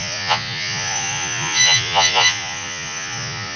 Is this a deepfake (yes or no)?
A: yes